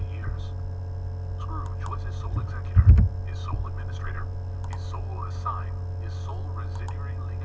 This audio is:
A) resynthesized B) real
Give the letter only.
B